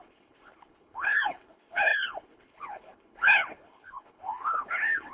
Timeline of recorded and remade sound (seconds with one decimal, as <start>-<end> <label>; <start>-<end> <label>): 0.0-5.1 remade